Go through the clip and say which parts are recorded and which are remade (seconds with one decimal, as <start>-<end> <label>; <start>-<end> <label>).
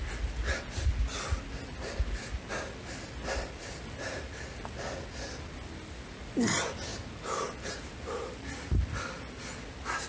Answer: 0.0-10.1 recorded